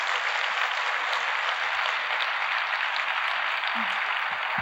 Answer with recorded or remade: recorded